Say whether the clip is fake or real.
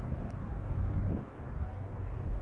fake